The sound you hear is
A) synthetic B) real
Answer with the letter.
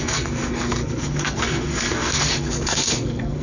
A